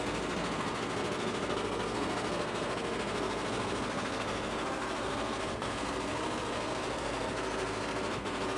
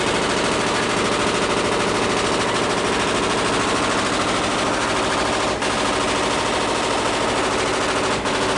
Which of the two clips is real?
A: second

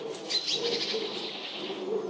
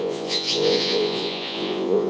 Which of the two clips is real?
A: first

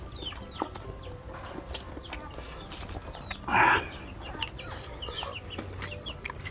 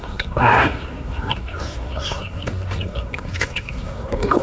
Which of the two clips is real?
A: first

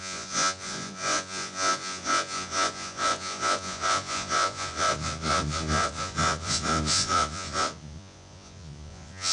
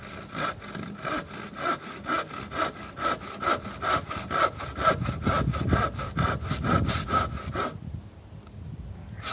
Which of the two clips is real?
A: second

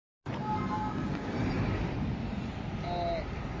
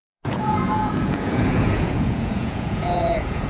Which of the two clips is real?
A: first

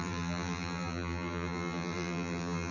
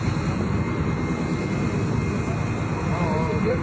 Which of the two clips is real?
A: second